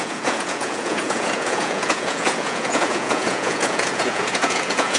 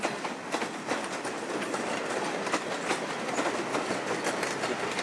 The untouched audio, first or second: second